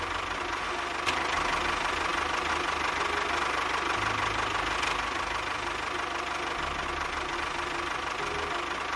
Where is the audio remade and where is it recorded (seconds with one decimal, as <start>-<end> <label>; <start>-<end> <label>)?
0.0-9.0 recorded